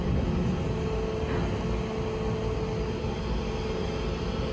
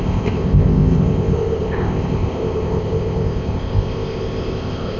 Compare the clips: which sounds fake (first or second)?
second